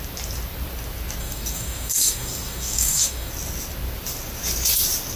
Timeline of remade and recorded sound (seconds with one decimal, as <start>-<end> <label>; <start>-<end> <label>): 0.0-1.2 recorded; 1.2-3.3 remade; 3.3-5.2 recorded